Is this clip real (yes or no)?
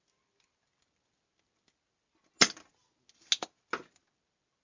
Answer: yes